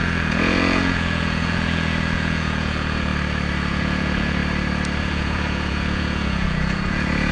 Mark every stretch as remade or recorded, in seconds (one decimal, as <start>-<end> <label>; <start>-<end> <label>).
0.0-3.1 remade; 3.1-3.7 recorded; 3.7-4.4 remade; 4.4-5.0 recorded; 5.0-7.3 remade